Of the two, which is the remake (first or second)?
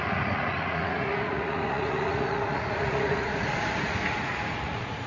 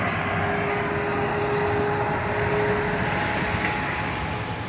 first